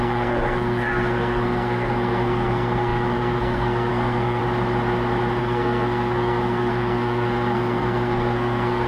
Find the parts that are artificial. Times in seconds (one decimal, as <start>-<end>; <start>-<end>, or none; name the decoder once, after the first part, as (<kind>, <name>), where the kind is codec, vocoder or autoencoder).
0.0-4.4 (codec, SNAC); 5.4-8.9